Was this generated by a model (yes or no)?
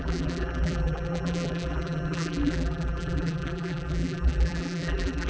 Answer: yes